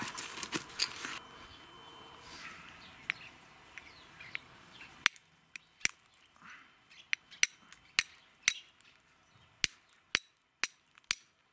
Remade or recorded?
recorded